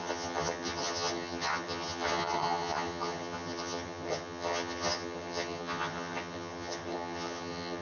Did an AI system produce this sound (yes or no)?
yes